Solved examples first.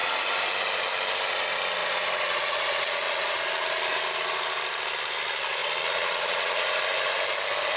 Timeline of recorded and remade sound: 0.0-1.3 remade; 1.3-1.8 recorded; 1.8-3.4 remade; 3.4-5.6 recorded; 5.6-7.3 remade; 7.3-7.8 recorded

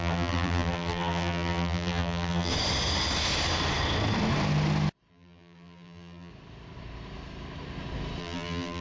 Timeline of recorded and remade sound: 0.0-2.5 remade; 2.5-5.1 recorded; 5.1-6.3 remade; 6.3-8.2 recorded; 8.2-8.8 remade

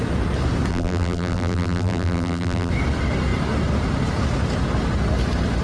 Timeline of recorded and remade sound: 0.0-0.7 recorded; 0.7-2.7 remade; 2.7-5.6 recorded

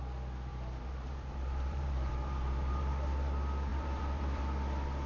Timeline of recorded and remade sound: 0.0-0.5 recorded; 0.5-2.9 remade; 2.9-3.7 recorded; 3.7-4.4 remade; 4.4-5.1 recorded